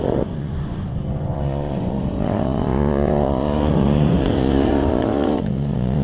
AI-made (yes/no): yes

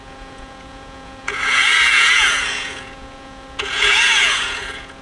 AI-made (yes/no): yes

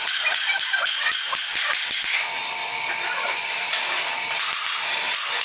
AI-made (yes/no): no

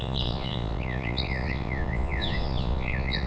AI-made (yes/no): yes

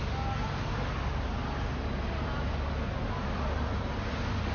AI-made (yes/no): no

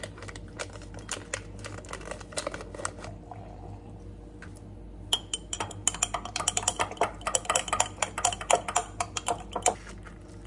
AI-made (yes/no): no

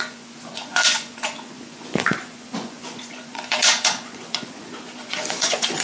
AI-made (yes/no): yes